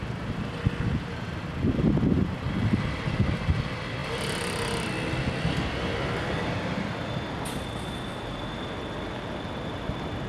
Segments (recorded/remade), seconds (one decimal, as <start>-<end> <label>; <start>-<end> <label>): 0.0-4.0 recorded; 4.0-5.0 remade; 5.0-10.3 recorded